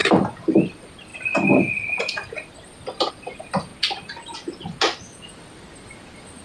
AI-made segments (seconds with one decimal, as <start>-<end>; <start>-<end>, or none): none